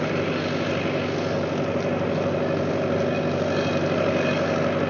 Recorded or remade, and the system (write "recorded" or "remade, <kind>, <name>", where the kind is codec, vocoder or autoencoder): recorded